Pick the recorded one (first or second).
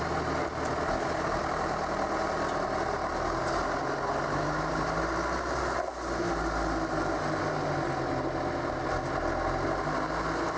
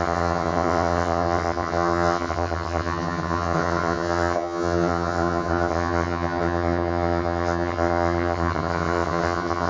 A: first